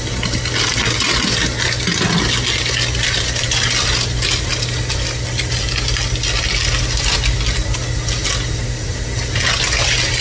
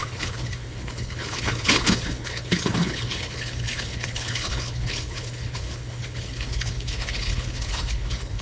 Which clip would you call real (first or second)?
first